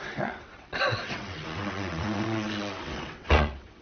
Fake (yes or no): yes